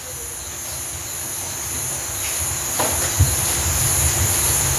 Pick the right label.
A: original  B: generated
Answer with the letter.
A